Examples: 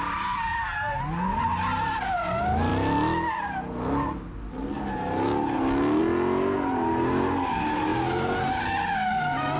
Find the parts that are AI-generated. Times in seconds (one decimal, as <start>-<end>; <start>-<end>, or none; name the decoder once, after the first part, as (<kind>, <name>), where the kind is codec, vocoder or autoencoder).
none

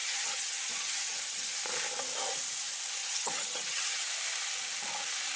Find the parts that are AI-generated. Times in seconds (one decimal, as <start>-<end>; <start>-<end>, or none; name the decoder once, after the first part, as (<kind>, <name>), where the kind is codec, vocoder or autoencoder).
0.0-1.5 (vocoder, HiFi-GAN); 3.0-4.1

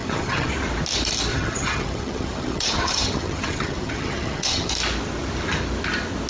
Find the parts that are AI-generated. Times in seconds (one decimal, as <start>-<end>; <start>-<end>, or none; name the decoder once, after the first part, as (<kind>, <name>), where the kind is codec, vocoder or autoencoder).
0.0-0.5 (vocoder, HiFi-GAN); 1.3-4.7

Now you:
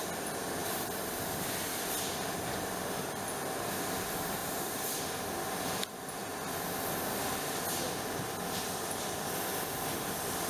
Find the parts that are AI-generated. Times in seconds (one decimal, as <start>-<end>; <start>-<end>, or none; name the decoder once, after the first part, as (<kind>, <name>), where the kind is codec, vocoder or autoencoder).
4.4-5.0 (vocoder, BigVGAN v2)